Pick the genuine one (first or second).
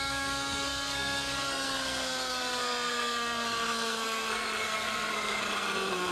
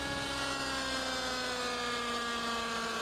second